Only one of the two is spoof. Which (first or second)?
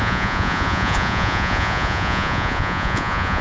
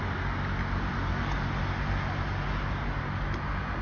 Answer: first